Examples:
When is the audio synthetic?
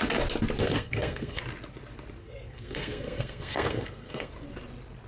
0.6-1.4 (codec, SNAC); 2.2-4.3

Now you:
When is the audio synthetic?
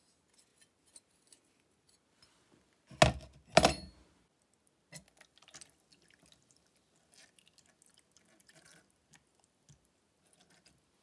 none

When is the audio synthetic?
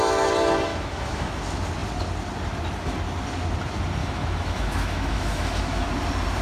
0.7-1.3 (autoencoder, DAC-VAE); 4.0-5.9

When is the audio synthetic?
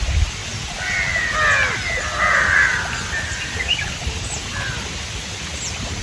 none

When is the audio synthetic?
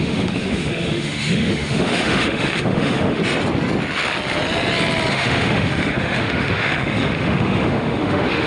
0.0-3.2 (autoencoder, DAC-VAE); 5.1-8.5